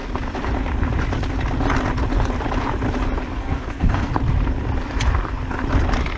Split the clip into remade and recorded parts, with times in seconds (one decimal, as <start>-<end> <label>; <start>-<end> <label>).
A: 0.0-3.4 recorded; 3.4-4.1 remade; 4.1-6.2 recorded

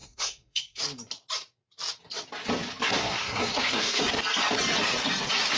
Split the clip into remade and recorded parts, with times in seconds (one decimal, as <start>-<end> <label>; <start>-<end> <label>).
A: 0.0-0.8 remade; 0.8-3.0 recorded; 3.0-4.0 remade; 4.0-5.6 recorded

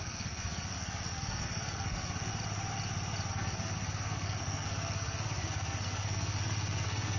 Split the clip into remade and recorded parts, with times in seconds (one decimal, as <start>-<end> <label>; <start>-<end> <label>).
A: 0.0-2.3 remade; 2.3-3.3 recorded; 3.3-7.2 remade

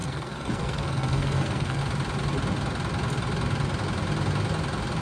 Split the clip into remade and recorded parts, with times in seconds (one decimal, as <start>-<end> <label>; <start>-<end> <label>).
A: 0.0-1.8 remade; 1.8-5.0 recorded

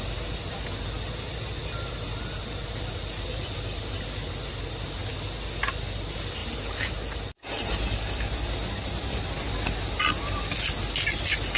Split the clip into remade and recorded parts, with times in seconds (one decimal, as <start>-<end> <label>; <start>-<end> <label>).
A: 0.0-11.6 recorded

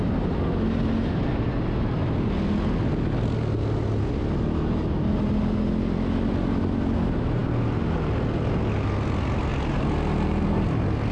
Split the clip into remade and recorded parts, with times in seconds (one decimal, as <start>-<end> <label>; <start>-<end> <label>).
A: 0.0-11.1 recorded